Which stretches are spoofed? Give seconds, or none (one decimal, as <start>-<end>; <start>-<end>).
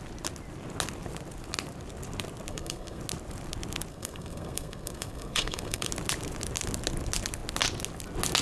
2.5-3.0; 3.9-5.9